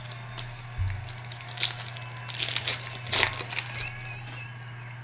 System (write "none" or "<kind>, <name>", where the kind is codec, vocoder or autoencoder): none